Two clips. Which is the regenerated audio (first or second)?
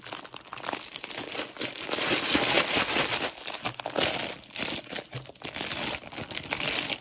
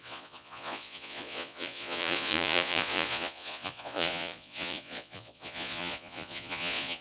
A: second